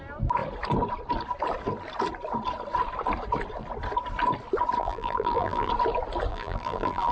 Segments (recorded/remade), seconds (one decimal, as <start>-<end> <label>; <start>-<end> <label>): 0.0-4.8 recorded; 4.8-5.7 remade; 5.7-6.3 recorded; 6.3-7.1 remade